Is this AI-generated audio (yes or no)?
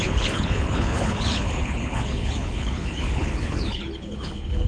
yes